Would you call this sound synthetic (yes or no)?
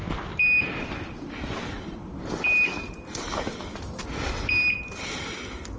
no